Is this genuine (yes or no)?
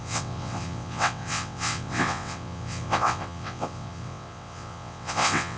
no